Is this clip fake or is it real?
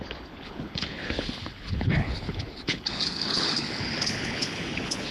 fake